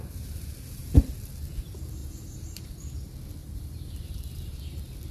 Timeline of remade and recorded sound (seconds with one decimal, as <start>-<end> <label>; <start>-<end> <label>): 0.0-2.0 recorded; 2.0-2.8 remade; 2.8-3.4 recorded; 3.4-4.6 remade; 4.6-5.1 recorded